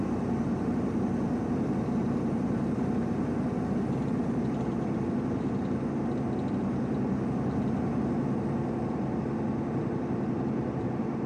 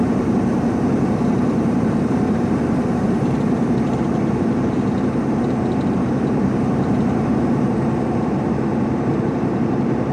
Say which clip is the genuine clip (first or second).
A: first